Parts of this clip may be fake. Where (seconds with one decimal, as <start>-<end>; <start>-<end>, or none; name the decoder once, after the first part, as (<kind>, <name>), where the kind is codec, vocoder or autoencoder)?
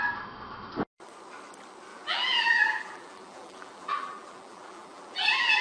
1.9-5.6 (vocoder, BigVGAN v2)